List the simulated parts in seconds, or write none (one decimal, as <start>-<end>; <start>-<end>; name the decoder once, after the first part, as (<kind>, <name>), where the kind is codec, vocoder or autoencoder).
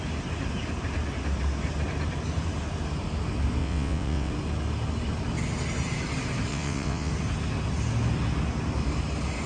3.6-4.3 (vocoder, WaveNeXt); 6.5-7.1